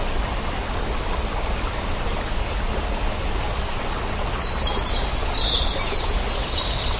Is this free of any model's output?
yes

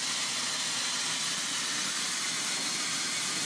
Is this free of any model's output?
yes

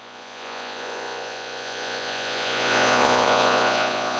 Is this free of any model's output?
no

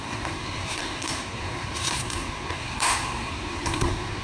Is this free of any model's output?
no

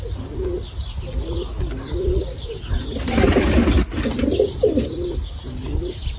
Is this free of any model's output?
yes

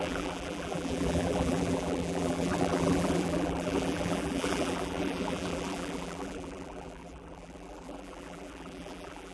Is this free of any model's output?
no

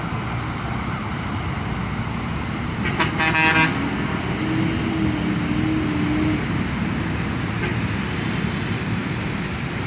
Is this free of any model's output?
yes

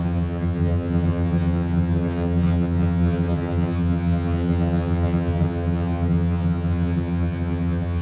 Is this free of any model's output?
no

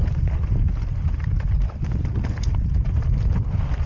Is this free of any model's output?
yes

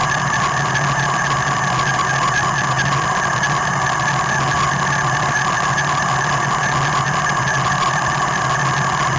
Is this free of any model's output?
yes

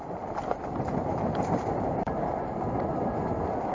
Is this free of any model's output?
yes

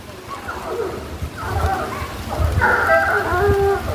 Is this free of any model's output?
yes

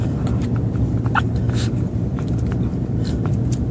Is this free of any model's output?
no